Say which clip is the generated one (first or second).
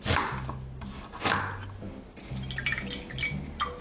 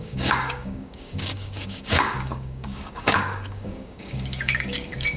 second